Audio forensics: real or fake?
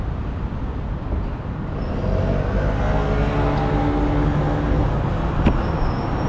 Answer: real